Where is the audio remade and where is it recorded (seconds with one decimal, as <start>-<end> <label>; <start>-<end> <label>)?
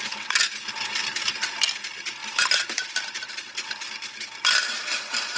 0.0-2.2 recorded; 2.2-2.8 remade; 2.8-5.4 recorded